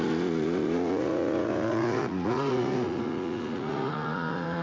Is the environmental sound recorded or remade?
remade